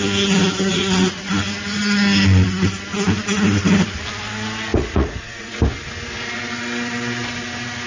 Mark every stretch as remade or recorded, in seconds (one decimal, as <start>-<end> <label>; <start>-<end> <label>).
0.0-0.7 recorded; 0.7-1.3 remade; 1.3-4.7 recorded; 4.7-5.6 remade; 5.6-7.9 recorded